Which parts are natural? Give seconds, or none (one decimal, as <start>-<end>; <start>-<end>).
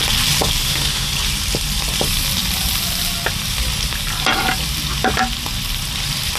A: 0.0-0.6; 1.1-6.4